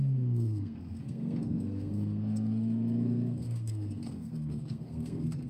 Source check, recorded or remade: remade